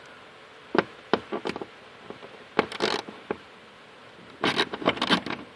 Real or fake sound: real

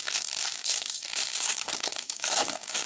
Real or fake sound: fake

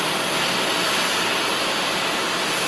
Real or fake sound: real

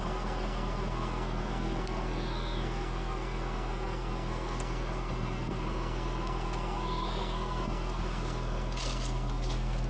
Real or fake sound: fake